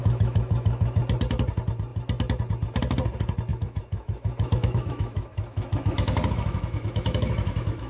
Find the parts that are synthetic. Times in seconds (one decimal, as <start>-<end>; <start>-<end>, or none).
0.0-1.0; 3.5-7.9